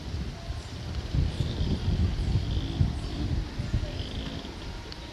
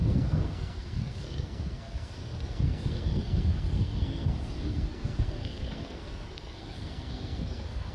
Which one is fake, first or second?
second